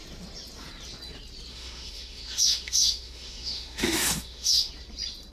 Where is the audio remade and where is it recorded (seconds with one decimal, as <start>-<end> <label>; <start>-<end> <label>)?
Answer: 0.0-1.5 recorded; 1.5-4.7 remade; 4.7-5.3 recorded